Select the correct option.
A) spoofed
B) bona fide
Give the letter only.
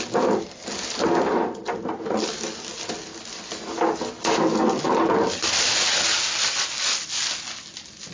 B